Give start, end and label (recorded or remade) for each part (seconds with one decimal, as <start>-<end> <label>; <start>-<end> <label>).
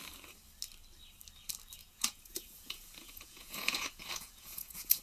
0.0-1.8 recorded; 1.8-5.0 remade